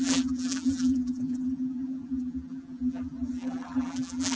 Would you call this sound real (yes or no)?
no